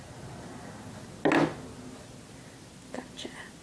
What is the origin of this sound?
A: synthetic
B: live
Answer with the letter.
B